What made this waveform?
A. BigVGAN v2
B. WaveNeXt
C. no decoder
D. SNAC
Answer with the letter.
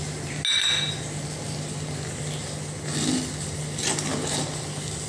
C